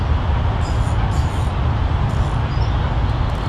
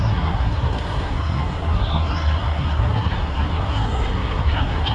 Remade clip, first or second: second